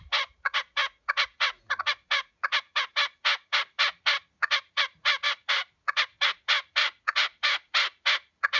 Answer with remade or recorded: remade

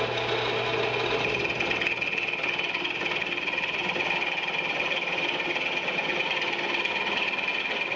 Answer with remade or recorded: recorded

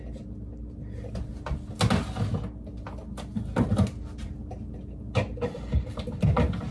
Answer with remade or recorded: recorded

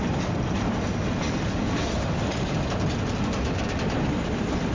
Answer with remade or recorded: recorded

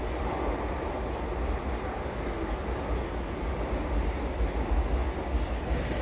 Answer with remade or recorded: recorded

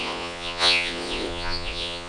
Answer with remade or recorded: remade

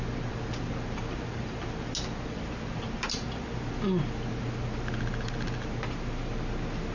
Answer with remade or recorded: recorded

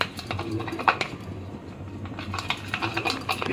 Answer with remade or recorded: recorded